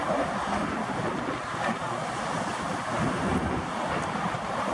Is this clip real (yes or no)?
yes